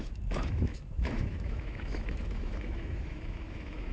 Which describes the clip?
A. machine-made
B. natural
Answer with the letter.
A